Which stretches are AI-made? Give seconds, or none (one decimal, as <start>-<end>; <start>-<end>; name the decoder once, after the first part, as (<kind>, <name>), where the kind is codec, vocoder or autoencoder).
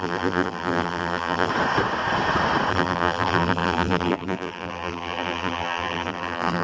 0.0-1.5 (vocoder, BigVGAN v2); 2.7-6.6